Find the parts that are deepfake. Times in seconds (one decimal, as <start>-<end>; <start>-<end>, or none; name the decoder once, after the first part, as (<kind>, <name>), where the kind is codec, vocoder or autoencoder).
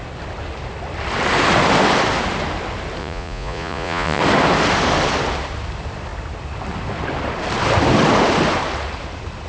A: 3.0-4.2 (vocoder, Vocos)